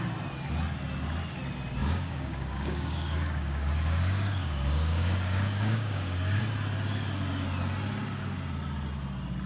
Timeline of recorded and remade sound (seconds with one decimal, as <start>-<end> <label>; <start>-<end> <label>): 0.0-1.8 recorded; 1.8-6.4 remade; 6.4-9.5 recorded